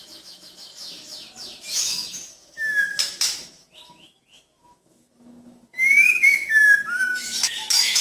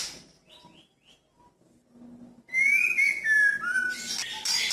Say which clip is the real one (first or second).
second